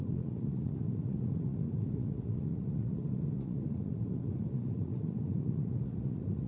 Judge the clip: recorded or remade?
remade